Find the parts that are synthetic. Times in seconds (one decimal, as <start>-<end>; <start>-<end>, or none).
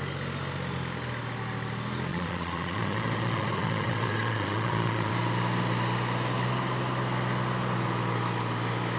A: 2.1-5.1